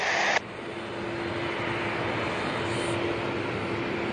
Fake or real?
real